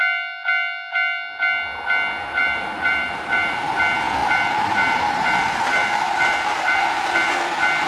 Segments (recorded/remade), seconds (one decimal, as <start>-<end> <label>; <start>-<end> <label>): 0.0-2.4 recorded; 2.4-3.7 remade; 3.7-4.2 recorded; 4.2-7.9 remade